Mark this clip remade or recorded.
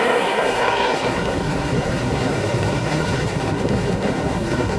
remade